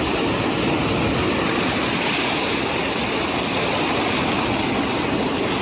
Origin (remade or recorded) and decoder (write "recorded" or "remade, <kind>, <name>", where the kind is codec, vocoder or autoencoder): recorded